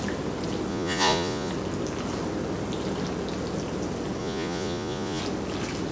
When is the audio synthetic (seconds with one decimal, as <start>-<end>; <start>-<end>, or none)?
0.7-1.5; 4.2-5.2

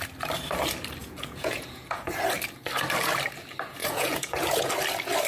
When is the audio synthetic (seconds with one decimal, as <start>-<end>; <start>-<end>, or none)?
1.0-2.1; 3.8-4.7

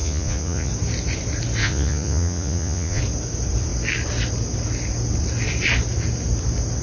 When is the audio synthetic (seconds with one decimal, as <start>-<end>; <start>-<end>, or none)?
0.0-0.7; 1.6-3.0